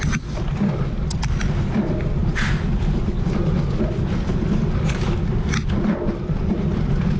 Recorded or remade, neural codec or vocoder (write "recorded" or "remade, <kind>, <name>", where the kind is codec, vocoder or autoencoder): remade, vocoder, BigVGAN v2